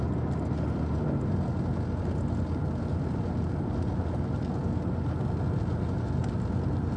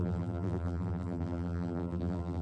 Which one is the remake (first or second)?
second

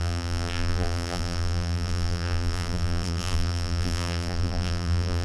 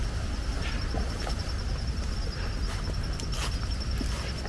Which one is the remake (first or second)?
first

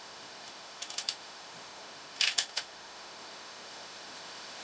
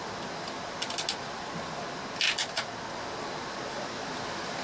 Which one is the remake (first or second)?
first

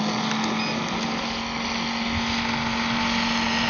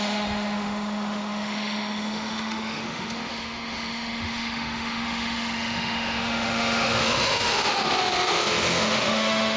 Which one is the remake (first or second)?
second